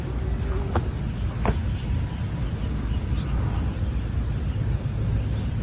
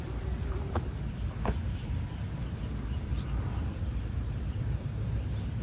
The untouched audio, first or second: first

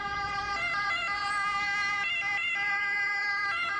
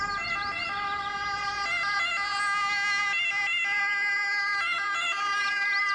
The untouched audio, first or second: second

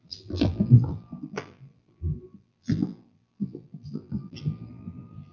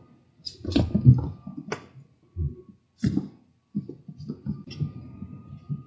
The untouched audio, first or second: second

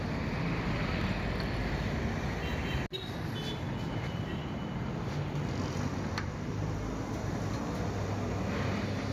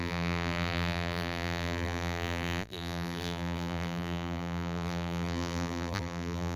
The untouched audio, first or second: first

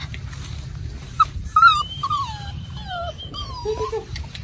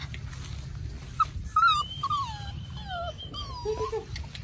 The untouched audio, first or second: second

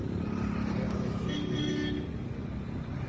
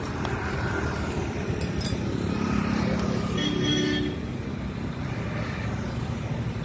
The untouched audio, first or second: first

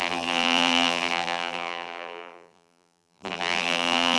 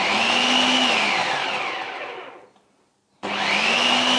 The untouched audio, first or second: second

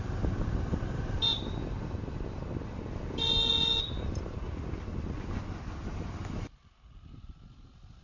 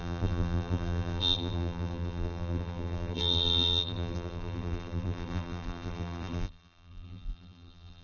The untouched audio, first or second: first